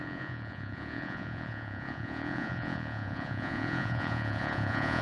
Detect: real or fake fake